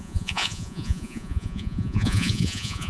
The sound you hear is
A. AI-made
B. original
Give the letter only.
A